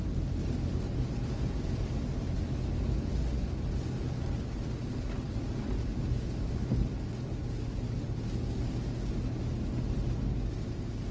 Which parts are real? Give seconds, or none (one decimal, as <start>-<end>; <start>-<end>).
0.0-0.4; 2.2-5.9; 7.2-11.1